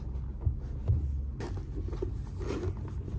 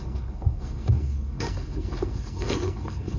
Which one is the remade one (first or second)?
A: second